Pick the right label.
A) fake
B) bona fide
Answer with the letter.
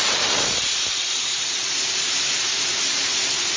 A